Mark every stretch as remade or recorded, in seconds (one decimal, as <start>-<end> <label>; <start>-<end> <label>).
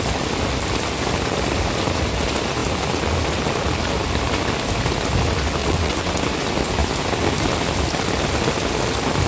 0.0-5.6 recorded; 5.6-6.2 remade; 6.2-9.3 recorded